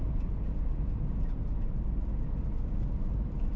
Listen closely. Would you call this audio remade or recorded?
recorded